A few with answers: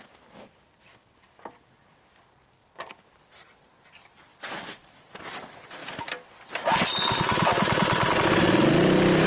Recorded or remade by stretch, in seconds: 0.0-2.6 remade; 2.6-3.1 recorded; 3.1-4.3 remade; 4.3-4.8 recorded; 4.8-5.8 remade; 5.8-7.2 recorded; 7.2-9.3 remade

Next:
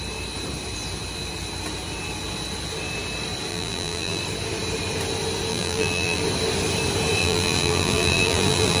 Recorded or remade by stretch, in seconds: 0.0-3.5 recorded; 3.5-4.2 remade; 4.2-5.5 recorded; 5.5-6.2 remade; 6.2-7.2 recorded; 7.2-8.8 remade

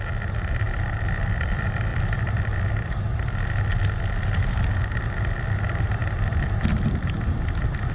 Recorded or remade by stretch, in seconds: 0.0-1.9 recorded; 1.9-2.9 remade; 2.9-6.0 recorded; 6.0-6.9 remade; 6.9-7.9 recorded